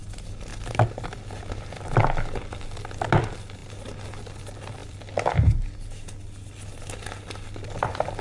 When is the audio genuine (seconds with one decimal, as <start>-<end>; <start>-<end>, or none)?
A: 0.0-8.2